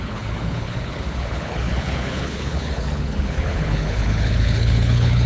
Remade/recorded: remade